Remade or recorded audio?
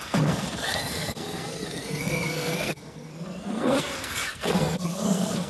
remade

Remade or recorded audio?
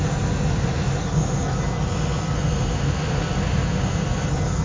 recorded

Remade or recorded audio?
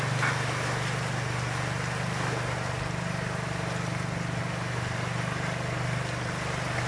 recorded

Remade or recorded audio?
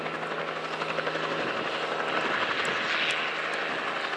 recorded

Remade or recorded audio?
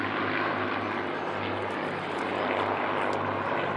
recorded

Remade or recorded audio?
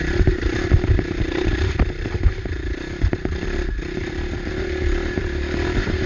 remade